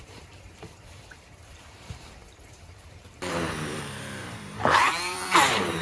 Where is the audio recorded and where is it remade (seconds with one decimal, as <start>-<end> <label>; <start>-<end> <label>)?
0.0-5.8 remade